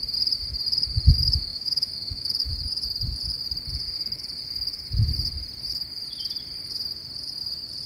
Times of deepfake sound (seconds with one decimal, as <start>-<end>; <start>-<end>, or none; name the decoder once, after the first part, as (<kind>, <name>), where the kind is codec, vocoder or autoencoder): 1.5-2.5 (autoencoder, DAC-VAE)

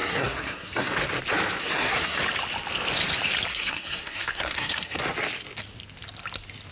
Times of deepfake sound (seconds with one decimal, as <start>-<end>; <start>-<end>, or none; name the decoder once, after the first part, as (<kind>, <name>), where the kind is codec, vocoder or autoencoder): 0.0-0.9 (codec, SNAC); 1.6-2.2; 3.5-5.0

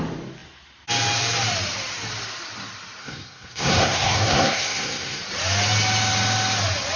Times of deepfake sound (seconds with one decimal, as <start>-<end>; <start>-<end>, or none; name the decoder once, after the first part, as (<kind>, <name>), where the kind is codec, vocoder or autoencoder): 3.0-5.2 (codec, SNAC)

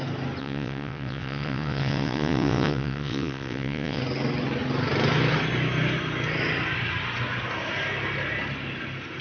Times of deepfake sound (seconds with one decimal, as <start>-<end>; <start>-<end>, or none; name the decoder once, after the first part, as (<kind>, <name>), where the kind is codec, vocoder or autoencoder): 0.4-4.0 (vocoder, WaveNeXt)

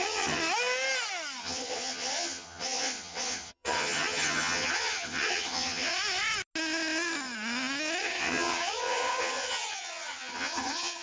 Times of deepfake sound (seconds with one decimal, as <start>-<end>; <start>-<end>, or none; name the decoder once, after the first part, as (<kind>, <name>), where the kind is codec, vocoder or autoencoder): 0.0-0.4 (vocoder, HiFi-GAN); 1.4-5.9; 8.0-11.0

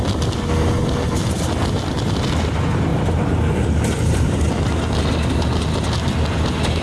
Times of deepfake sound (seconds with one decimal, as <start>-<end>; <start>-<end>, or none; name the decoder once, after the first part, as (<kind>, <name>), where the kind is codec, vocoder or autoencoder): 2.9-4.5 (vocoder, BigVGAN v2)